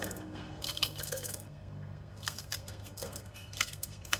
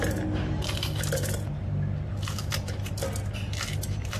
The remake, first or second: first